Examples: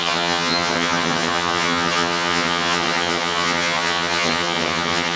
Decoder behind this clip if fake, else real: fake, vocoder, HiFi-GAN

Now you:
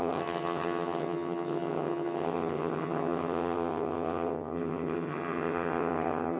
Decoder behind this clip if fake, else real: fake, vocoder, HiFi-GAN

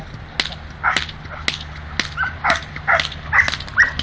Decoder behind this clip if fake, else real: real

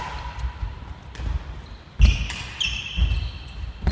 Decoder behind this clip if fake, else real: real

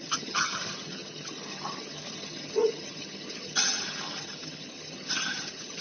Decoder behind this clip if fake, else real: fake, vocoder, HiFi-GAN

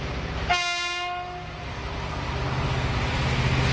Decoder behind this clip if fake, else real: real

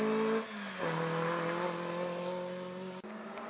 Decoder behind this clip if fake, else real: real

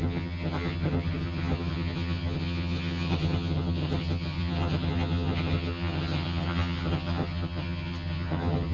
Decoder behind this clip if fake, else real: fake, vocoder, HiFi-GAN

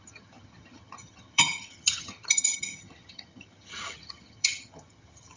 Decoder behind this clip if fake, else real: fake, vocoder, HiFi-GAN